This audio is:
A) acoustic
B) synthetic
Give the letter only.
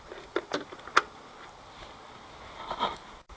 A